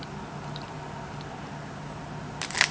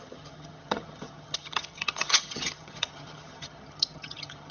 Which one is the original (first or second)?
first